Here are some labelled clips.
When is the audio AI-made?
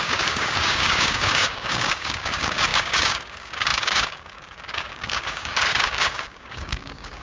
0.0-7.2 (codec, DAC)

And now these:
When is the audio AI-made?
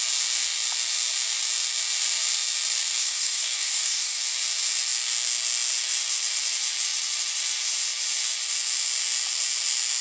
3.0-4.2 (codec, DAC)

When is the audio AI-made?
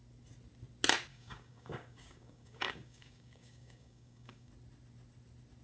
1.1-4.5 (codec, DAC)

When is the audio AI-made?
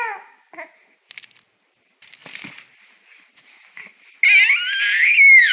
none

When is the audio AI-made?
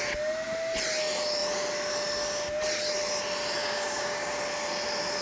3.6-4.4 (codec, DAC)